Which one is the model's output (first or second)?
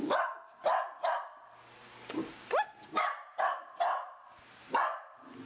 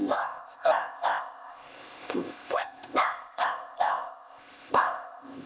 second